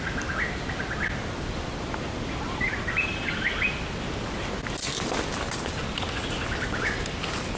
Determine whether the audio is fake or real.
real